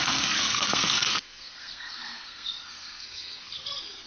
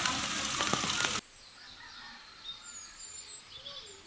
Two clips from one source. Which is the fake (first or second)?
first